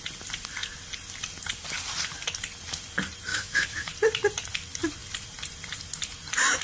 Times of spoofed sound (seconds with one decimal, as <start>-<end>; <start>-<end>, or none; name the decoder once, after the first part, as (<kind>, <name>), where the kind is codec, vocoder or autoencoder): 3.3-3.9 (autoencoder, DAC-VAE)